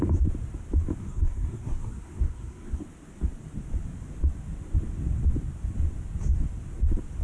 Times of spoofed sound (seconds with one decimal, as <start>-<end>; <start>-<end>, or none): 1.0-2.8